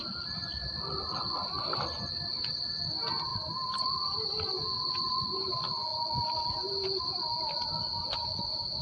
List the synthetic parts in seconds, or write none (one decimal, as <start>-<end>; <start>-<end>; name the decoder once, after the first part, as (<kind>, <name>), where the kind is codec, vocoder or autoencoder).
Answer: 0.5-2.5 (vocoder, BigVGAN v2); 5.9-6.5